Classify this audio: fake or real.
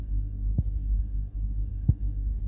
fake